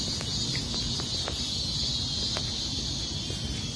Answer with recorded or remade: recorded